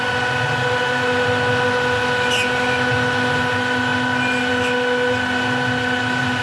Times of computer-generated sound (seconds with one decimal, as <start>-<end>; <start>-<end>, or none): none